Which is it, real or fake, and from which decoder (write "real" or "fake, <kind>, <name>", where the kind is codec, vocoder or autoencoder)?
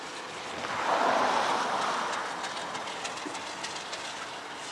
real